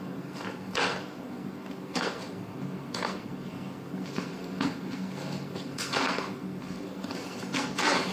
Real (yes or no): no